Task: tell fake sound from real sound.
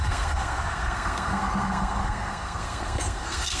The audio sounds fake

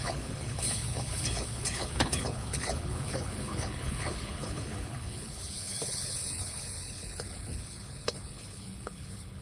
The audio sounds fake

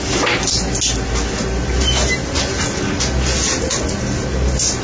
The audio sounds real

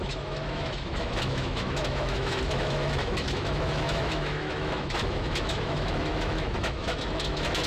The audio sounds fake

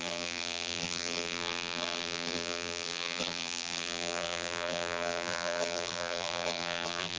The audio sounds fake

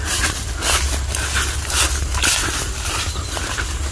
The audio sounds real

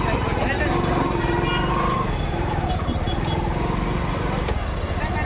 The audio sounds real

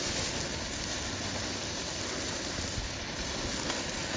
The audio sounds real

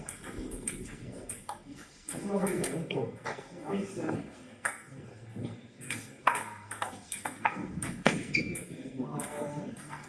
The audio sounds fake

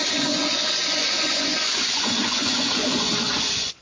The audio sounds fake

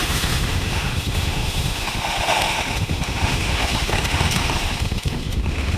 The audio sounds fake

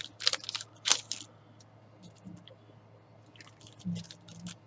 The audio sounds real